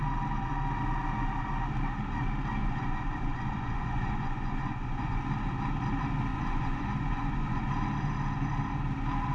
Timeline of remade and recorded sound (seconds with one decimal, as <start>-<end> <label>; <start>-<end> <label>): 0.0-2.6 recorded; 2.6-5.2 remade; 5.2-6.3 recorded; 6.3-7.7 remade; 7.7-9.3 recorded